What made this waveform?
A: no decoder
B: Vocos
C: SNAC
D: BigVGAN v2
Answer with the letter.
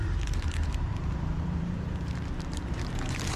D